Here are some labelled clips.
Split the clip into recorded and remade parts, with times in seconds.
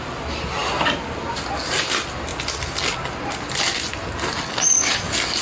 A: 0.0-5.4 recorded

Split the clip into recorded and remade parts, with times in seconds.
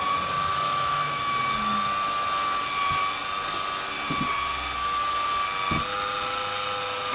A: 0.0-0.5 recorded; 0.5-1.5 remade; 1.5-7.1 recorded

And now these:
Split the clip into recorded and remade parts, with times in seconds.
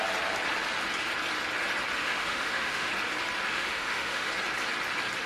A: 0.0-2.0 recorded; 2.0-2.9 remade; 2.9-3.5 recorded; 3.5-4.3 remade; 4.3-5.3 recorded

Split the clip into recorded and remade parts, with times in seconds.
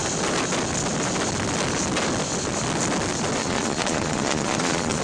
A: 0.0-3.4 recorded; 3.4-5.0 remade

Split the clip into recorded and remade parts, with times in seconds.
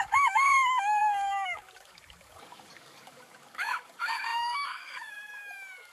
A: 0.0-5.9 remade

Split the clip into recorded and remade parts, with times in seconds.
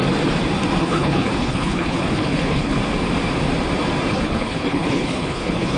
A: 0.0-0.8 recorded; 0.8-2.8 remade; 2.8-4.1 recorded; 4.1-5.8 remade